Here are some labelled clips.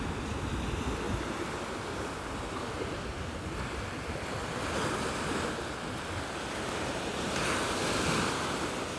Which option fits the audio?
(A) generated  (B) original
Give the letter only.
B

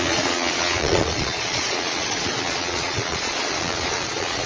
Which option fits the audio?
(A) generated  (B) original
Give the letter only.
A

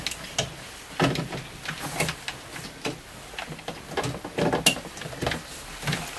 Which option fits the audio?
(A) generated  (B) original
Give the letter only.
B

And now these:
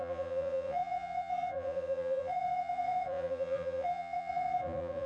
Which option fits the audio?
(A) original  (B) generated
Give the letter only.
B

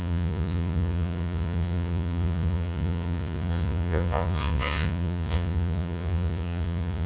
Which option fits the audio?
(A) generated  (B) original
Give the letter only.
A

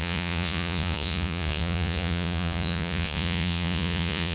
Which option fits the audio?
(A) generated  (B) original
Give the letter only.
A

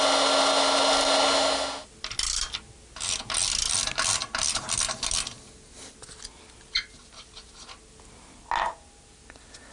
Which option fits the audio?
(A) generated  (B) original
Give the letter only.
B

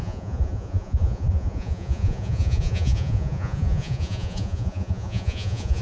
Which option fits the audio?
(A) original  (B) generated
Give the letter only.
B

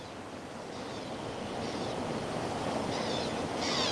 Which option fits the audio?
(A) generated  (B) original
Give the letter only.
B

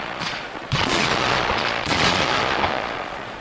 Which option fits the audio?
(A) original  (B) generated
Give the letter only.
B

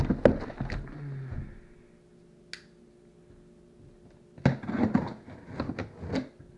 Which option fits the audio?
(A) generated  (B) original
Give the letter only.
B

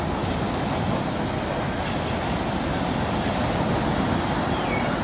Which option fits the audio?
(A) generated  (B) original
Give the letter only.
B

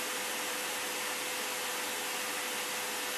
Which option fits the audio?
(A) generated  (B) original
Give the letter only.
B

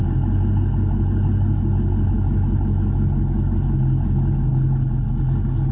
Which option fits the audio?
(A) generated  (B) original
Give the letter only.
B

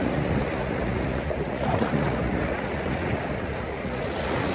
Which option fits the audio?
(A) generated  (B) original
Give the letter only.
A